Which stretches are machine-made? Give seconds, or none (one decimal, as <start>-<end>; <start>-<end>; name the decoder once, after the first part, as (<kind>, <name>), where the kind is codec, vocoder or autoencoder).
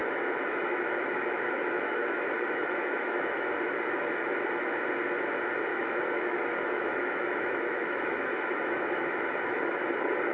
0.0-3.6 (autoencoder, DAC-VAE); 5.7-9.3